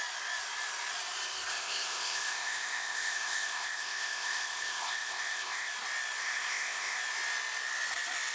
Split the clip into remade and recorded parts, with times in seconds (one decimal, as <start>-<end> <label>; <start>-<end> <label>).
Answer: 0.0-1.5 recorded; 1.5-5.7 remade; 5.7-6.2 recorded; 6.2-7.0 remade; 7.0-8.3 recorded